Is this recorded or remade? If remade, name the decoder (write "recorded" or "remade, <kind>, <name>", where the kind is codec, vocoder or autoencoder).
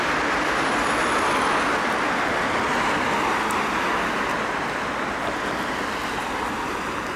recorded